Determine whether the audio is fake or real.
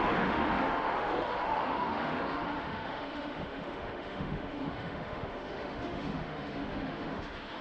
fake